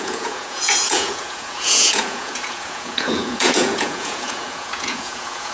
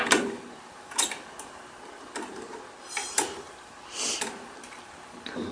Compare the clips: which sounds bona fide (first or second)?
second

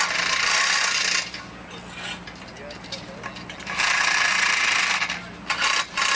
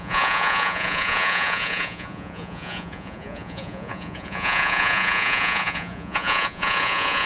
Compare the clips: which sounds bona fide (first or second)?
first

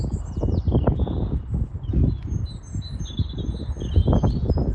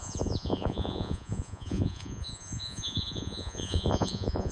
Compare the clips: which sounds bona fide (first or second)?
first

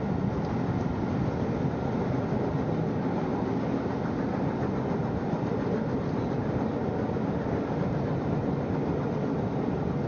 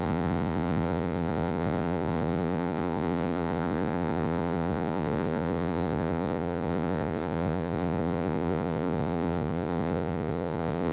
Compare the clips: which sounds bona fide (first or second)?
first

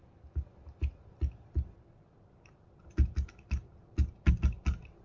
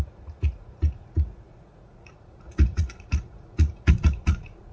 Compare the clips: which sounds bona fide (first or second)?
first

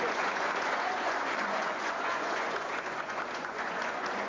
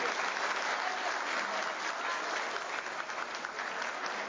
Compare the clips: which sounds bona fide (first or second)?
second